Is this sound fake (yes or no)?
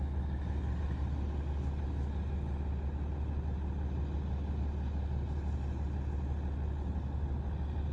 no